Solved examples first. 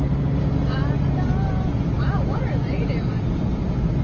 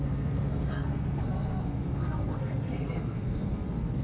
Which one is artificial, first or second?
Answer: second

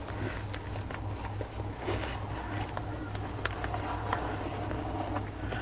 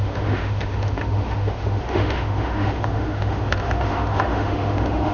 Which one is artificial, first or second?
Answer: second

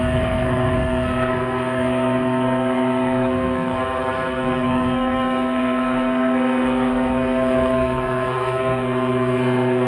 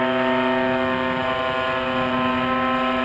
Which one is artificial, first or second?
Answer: first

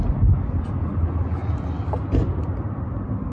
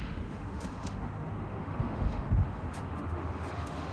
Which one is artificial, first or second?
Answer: second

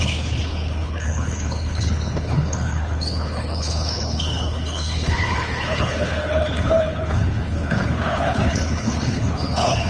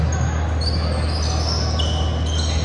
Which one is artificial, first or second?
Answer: first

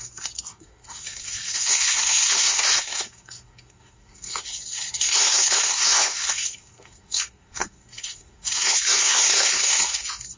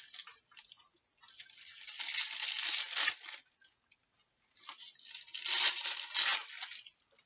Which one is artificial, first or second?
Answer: first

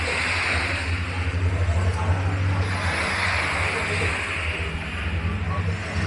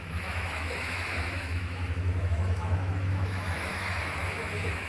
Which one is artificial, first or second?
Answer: second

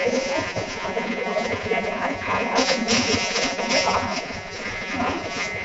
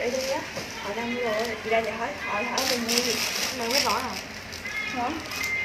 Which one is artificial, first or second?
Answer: first